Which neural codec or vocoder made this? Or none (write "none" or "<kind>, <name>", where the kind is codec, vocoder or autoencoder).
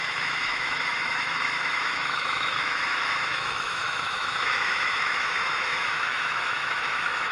autoencoder, DAC-VAE